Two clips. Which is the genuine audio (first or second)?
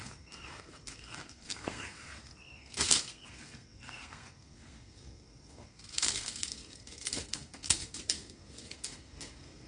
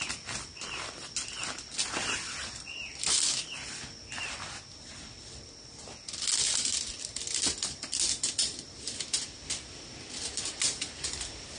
second